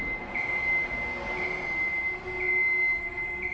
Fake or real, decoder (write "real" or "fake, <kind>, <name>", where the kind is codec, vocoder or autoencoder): real